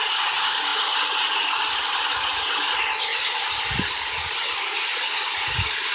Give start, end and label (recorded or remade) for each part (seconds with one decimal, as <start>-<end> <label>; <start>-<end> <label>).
0.0-0.7 recorded; 0.7-1.8 remade; 1.8-5.9 recorded